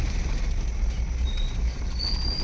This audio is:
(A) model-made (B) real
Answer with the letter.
B